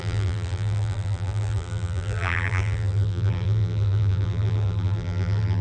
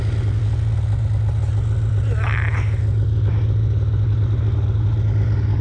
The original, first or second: second